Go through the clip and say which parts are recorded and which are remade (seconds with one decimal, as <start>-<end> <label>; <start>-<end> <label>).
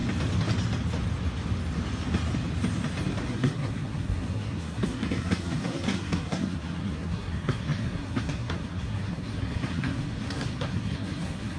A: 0.0-3.2 recorded; 3.2-11.6 remade